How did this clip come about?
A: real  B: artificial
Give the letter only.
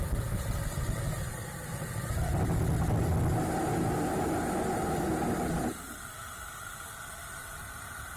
A